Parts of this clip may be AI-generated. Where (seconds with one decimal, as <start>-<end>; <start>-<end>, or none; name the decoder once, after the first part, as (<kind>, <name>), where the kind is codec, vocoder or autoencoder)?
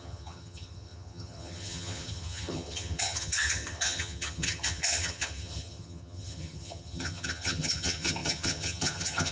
0.0-9.3 (vocoder, HiFi-GAN)